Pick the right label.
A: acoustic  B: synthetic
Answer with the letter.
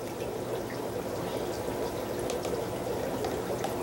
A